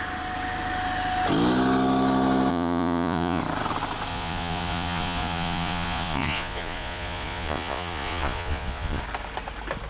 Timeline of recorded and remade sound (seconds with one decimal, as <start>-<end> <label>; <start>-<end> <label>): 0.0-2.5 recorded; 2.5-3.4 remade; 3.4-4.1 recorded; 4.1-9.0 remade; 9.0-9.9 recorded